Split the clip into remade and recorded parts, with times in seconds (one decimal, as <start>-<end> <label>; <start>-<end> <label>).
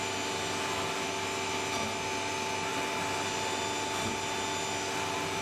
0.0-5.4 recorded